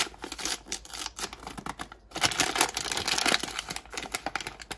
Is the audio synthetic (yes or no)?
no